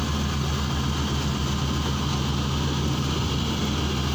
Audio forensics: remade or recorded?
recorded